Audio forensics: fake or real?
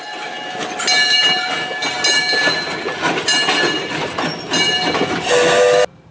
real